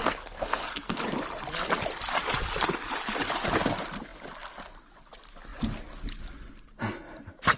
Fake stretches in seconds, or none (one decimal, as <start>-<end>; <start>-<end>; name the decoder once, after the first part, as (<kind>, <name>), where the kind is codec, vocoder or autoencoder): 0.0-1.0 (codec, SNAC)